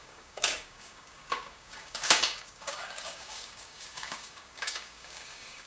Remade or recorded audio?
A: remade